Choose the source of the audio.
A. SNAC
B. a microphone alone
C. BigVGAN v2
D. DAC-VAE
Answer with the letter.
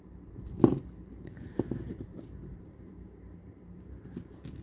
C